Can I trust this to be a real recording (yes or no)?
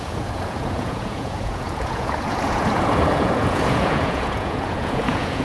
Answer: no